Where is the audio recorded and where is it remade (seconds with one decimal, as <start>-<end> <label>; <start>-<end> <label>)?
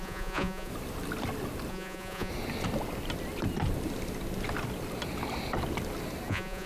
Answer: 0.0-0.7 remade; 0.7-1.7 recorded; 1.7-2.3 remade; 2.3-6.3 recorded; 6.3-6.7 remade